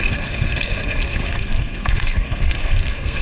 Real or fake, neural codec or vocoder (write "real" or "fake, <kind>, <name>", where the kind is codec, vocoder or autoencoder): fake, codec, SNAC